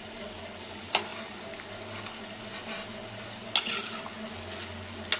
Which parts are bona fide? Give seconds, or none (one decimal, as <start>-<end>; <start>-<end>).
0.0-5.2